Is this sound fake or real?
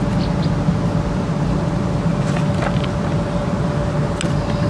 real